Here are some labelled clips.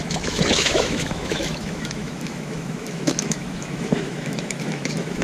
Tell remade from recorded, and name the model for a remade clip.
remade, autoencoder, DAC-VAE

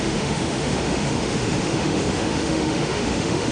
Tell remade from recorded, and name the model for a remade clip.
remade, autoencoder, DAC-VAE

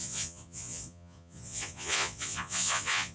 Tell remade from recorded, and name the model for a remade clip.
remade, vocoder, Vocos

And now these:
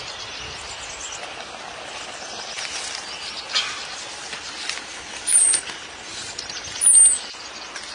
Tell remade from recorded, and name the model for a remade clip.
recorded